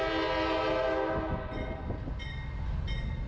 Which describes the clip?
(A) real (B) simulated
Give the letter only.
A